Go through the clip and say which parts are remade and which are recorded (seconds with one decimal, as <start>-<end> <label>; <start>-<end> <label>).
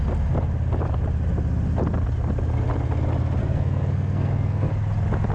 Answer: 0.0-3.4 recorded; 3.4-4.7 remade; 4.7-5.3 recorded